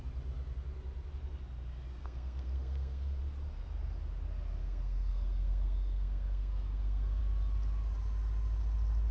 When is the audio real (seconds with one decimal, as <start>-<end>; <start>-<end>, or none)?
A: 0.0-2.0; 3.2-4.6; 7.2-9.1